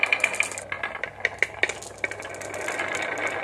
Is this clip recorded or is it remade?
recorded